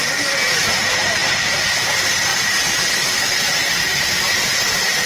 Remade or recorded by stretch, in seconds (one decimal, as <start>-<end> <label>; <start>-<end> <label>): 0.0-5.1 recorded